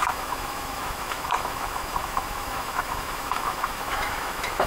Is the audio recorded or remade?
remade